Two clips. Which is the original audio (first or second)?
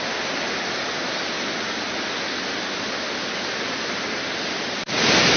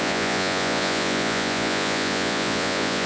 first